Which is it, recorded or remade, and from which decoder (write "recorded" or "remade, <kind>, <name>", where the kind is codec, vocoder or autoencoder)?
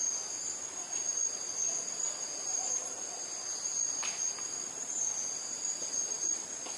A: recorded